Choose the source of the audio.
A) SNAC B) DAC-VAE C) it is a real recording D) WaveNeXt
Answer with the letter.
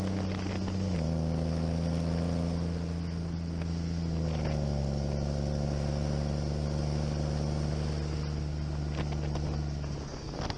C